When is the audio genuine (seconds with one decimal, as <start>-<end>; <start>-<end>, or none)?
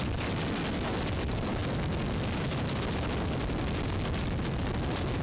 0.0-5.2